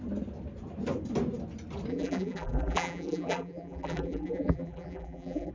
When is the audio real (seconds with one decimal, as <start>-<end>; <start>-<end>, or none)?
0.0-1.9